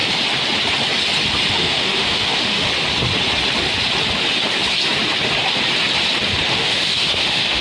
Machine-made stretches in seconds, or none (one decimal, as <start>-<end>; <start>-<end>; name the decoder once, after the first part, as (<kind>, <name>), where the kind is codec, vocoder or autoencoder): 1.5-2.7 (autoencoder, DAC-VAE); 6.5-7.6